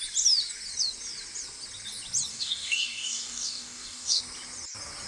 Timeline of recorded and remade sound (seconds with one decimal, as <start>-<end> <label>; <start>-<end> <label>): 0.0-2.3 recorded; 2.3-4.2 remade; 4.2-5.1 recorded